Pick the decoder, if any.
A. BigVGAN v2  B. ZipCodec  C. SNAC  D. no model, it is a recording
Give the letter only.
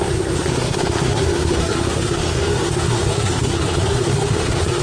C